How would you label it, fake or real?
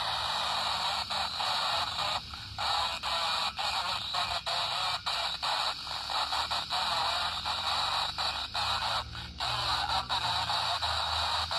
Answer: real